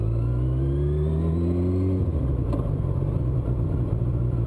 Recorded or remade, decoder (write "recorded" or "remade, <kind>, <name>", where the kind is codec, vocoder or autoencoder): recorded